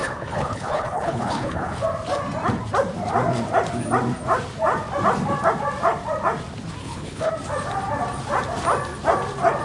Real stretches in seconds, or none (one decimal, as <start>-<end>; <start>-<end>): 1.8-6.8; 7.3-9.6